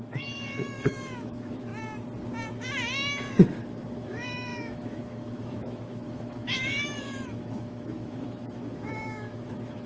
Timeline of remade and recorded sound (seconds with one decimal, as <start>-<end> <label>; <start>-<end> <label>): 0.0-1.7 remade; 1.7-3.3 recorded; 3.3-9.9 remade